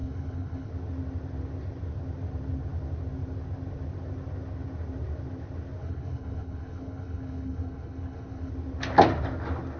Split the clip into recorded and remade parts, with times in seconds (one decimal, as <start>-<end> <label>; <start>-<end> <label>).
0.0-0.7 remade; 0.7-5.8 recorded; 5.8-8.5 remade; 8.5-9.8 recorded